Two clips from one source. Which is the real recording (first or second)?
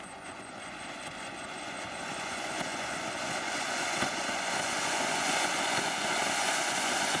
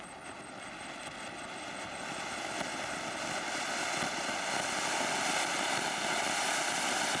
second